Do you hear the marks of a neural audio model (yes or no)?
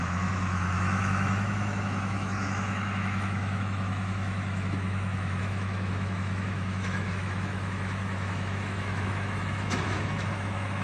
yes